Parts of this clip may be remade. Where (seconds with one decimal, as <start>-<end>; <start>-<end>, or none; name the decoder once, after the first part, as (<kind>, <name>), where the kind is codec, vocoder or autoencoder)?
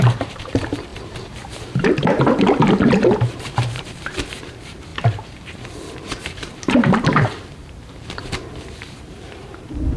0.0-10.0 (vocoder, BigVGAN v2)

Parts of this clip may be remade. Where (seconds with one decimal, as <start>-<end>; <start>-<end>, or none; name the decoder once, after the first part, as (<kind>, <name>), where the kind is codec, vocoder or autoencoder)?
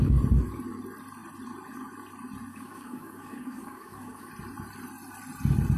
2.5-4.3 (codec, DAC)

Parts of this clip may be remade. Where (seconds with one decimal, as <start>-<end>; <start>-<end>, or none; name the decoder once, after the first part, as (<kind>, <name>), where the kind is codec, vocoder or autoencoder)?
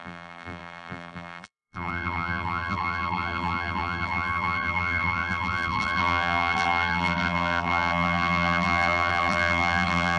0.0-10.2 (vocoder, BigVGAN v2)